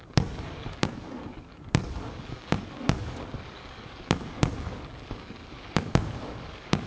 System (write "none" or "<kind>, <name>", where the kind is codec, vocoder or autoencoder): codec, DAC